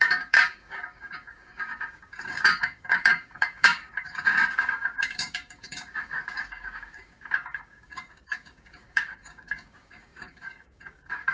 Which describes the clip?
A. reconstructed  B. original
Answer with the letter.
A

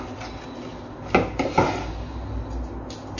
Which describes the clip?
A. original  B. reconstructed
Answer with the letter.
A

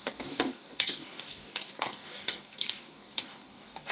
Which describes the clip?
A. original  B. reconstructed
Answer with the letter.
B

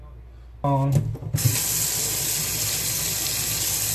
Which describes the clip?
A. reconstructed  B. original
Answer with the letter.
B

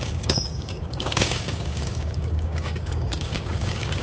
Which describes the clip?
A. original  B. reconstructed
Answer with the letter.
B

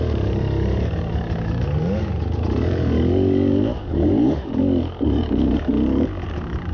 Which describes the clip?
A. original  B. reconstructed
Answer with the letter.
B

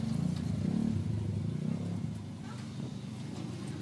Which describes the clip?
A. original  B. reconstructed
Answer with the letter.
A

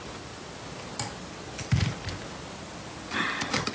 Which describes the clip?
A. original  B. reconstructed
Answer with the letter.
A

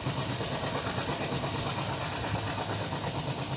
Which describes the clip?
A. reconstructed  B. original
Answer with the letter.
B